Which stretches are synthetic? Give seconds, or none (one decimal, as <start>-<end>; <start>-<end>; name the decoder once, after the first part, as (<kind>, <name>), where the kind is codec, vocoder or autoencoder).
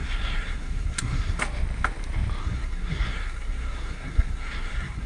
0.0-1.4 (codec, SNAC); 2.4-5.1